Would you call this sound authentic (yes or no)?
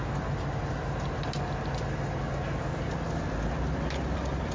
yes